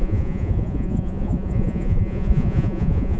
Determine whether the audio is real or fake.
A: fake